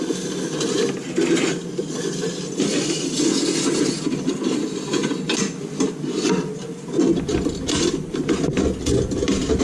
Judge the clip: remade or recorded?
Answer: recorded